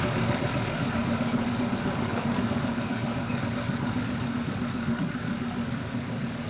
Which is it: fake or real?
fake